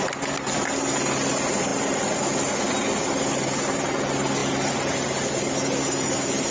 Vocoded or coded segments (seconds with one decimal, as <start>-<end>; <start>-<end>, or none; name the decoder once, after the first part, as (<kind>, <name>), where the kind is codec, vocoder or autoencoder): none